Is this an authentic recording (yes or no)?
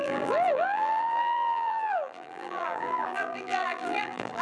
no